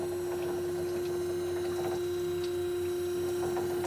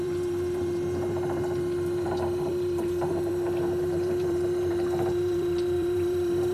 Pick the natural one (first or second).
first